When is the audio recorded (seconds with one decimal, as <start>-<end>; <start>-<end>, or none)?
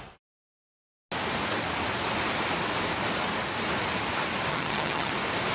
0.0-4.5; 5.1-5.5